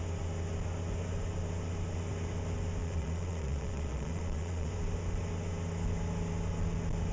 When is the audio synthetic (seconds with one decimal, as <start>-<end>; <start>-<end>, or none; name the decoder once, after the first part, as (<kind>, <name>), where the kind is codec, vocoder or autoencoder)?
2.8-4.7 (vocoder, Vocos)